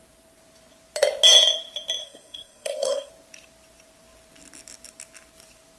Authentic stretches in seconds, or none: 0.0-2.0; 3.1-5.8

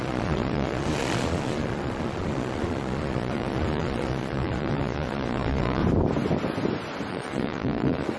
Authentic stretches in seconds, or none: 5.8-7.1

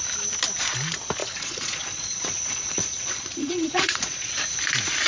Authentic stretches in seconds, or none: 0.0-1.2; 4.3-5.1

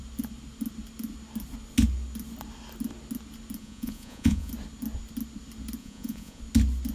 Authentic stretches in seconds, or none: 0.0-3.6; 4.5-5.8; 6.4-6.9

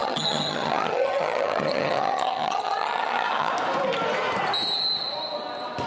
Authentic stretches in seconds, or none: 3.5-5.9

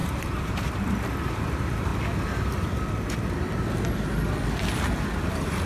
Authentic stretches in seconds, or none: 1.9-5.3

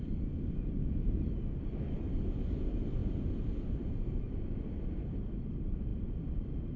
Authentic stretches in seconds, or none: 0.0-6.8